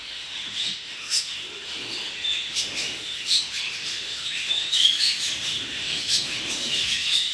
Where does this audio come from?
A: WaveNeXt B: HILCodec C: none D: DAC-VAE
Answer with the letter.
D